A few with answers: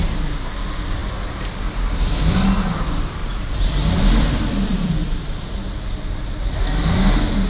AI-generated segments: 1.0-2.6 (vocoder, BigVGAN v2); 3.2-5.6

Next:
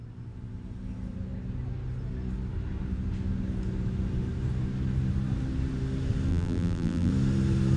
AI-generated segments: 6.3-7.1 (vocoder, BigVGAN v2)

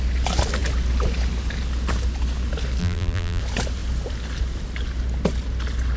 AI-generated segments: 2.8-3.4 (vocoder, BigVGAN v2)

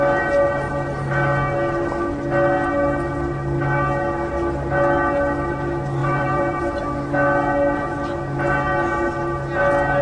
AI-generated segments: 6.0-6.8 (vocoder, BigVGAN v2)

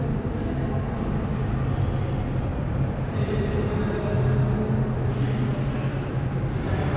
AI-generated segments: 2.5-4.1 (vocoder, BigVGAN v2)

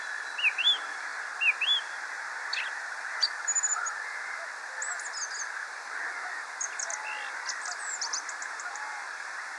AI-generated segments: 0.0-1.1 (vocoder, BigVGAN v2); 1.8-3.8; 7.5-9.6

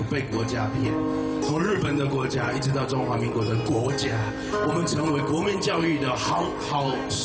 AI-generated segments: 0.0-7.2 (vocoder, BigVGAN v2)

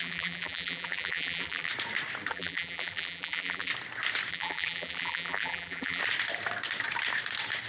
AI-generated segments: 0.0-1.7 (vocoder, BigVGAN v2); 2.3-3.7; 4.3-6.0